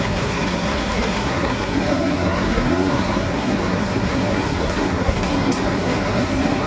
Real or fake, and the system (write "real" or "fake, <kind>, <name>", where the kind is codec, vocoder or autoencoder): fake, codec, SNAC